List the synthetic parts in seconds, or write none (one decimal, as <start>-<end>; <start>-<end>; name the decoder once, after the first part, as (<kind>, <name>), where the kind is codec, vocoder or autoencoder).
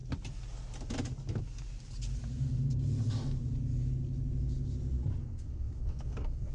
5.2-6.5 (codec, SNAC)